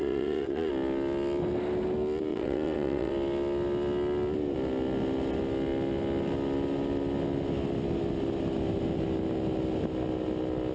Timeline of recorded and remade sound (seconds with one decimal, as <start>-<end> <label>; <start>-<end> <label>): 0.0-0.7 remade; 0.7-2.3 recorded; 2.3-3.1 remade; 3.1-10.7 recorded